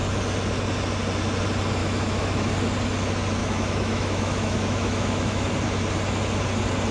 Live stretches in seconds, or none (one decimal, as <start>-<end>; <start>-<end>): 0.0-1.8; 2.5-3.4; 5.5-6.9